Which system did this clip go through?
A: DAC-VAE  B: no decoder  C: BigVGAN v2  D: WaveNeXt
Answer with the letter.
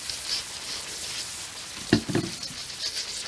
B